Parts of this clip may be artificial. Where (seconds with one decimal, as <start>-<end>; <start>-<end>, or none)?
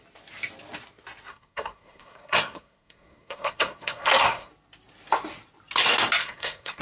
1.3-4.5; 6.2-6.8